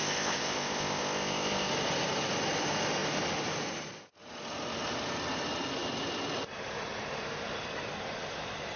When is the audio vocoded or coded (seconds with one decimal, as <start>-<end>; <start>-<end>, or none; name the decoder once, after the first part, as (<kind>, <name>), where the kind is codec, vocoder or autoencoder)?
0.0-1.7 (codec, ZipCodec)